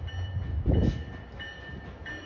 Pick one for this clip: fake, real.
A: real